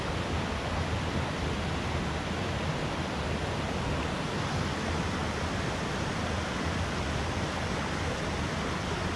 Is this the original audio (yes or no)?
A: yes